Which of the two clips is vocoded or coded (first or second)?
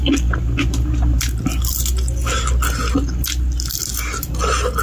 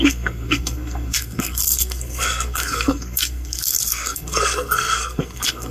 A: second